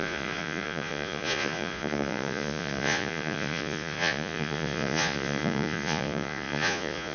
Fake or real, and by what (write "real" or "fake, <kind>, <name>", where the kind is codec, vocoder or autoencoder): fake, vocoder, Vocos